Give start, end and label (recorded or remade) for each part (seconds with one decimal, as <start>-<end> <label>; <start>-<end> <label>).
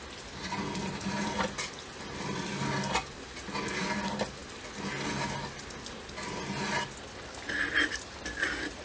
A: 0.0-8.8 recorded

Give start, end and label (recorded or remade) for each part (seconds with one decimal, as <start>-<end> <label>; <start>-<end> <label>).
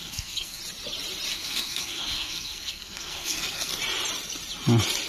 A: 0.0-0.6 remade; 0.6-1.3 recorded; 1.3-3.7 remade; 3.7-5.1 recorded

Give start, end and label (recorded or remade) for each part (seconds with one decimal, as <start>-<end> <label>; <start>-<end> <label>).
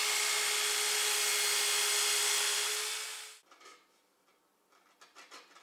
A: 0.0-5.6 recorded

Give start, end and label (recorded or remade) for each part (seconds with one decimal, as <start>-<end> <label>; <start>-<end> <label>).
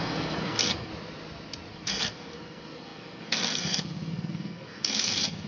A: 0.0-0.9 remade; 0.9-1.7 recorded; 1.7-5.5 remade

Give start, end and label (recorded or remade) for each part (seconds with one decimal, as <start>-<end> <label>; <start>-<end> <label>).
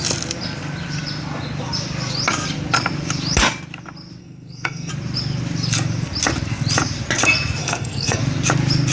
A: 0.0-4.2 recorded; 4.2-4.9 remade; 4.9-7.6 recorded; 7.6-8.2 remade; 8.2-8.9 recorded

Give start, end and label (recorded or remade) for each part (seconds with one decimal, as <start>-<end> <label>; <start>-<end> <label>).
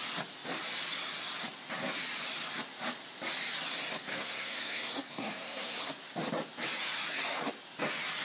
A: 0.0-4.1 recorded; 4.1-5.9 remade; 5.9-8.2 recorded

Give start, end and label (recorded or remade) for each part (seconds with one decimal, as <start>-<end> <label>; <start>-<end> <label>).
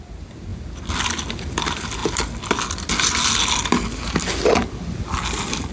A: 0.0-5.7 recorded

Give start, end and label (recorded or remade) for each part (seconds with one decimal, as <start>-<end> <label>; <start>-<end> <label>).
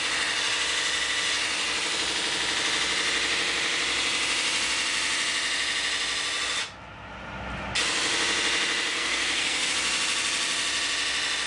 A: 0.0-8.9 recorded; 8.9-9.7 remade; 9.7-11.5 recorded